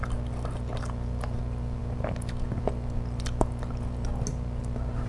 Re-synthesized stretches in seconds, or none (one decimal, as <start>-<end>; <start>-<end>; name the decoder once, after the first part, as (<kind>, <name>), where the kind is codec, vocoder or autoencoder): none